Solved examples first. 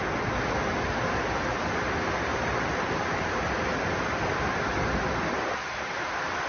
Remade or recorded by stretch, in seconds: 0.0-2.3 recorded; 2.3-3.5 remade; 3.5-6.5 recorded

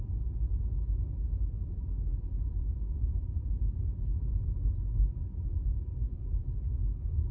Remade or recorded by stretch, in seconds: 0.0-6.2 remade; 6.2-7.3 recorded

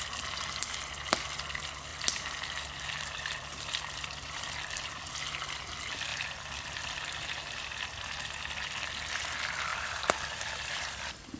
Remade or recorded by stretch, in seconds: 0.0-1.9 recorded; 1.9-5.6 remade; 5.6-9.7 recorded; 9.7-10.7 remade; 10.7-11.4 recorded

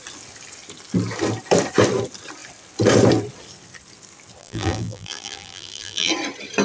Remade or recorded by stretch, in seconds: 0.0-4.4 recorded; 4.4-6.1 remade; 6.1-6.6 recorded

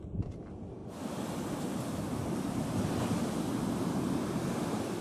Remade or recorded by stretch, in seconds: 0.0-5.0 recorded

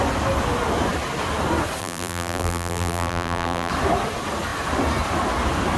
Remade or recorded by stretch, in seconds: 0.0-1.8 recorded; 1.8-3.7 remade; 3.7-5.8 recorded